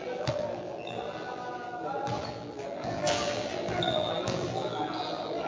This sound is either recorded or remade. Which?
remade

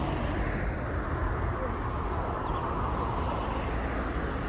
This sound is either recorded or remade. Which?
recorded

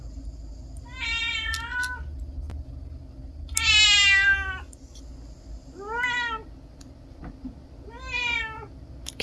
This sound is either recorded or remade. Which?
recorded